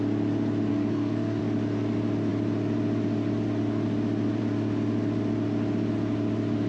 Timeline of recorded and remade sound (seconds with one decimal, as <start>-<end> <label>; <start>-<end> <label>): 0.0-0.7 recorded; 0.7-1.4 remade; 1.4-6.7 recorded